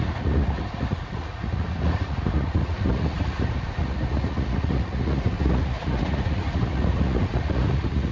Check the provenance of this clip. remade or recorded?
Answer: remade